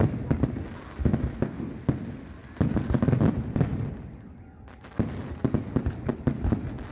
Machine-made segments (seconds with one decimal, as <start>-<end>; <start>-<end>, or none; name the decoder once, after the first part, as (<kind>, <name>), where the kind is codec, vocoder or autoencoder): 1.0-1.7 (codec, DAC)